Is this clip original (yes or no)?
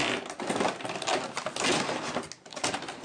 yes